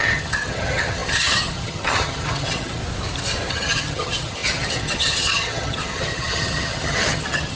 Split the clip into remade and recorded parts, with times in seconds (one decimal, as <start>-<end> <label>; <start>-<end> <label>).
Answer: 0.0-2.8 remade; 2.8-3.5 recorded; 3.5-7.6 remade